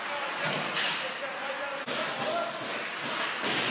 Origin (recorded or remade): recorded